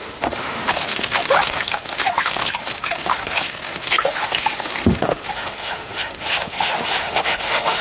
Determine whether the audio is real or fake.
fake